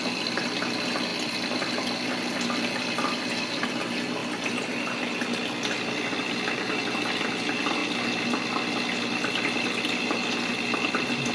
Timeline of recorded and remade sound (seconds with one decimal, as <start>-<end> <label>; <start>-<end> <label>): 0.0-11.3 recorded